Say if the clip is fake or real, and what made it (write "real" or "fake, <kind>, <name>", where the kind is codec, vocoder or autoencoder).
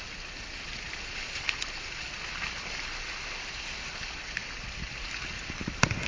real